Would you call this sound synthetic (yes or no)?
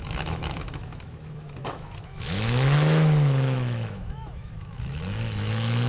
yes